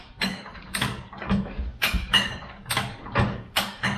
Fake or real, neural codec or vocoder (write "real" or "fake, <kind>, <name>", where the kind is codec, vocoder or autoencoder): fake, codec, DAC